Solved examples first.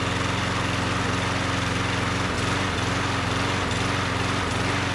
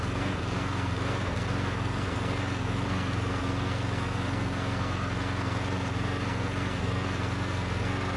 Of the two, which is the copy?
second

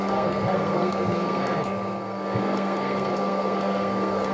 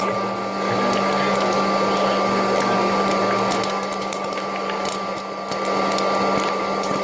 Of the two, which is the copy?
first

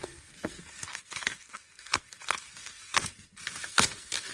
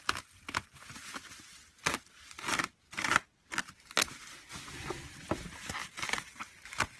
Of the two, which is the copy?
first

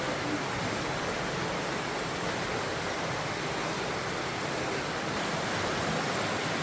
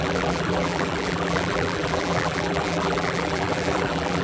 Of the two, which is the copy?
second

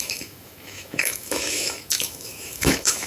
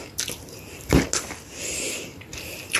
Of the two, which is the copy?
first